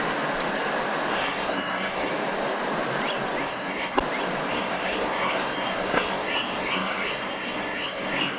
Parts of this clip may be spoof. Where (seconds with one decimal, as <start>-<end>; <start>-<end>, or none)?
1.1-2.1; 3.4-4.0; 4.5-8.4